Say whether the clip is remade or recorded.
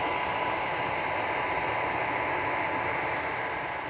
recorded